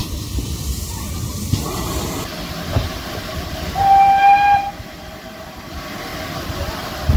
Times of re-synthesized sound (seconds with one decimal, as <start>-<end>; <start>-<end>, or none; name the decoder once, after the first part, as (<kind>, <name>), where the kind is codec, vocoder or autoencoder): 0.0-0.9 (vocoder, BigVGAN v2); 1.3-2.3; 2.9-5.6